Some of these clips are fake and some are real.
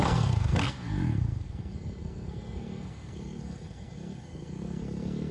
fake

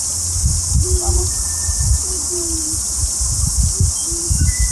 real